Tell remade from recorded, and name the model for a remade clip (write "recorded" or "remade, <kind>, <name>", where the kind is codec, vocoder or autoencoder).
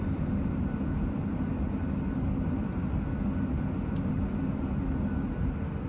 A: recorded